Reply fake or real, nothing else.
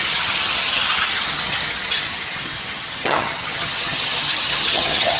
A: fake